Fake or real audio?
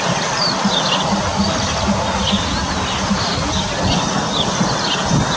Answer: real